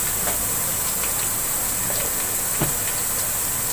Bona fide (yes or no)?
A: yes